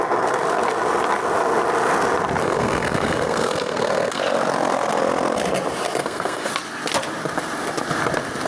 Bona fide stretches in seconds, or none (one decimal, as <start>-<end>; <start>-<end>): 0.0-2.4; 4.2-6.0; 6.5-8.5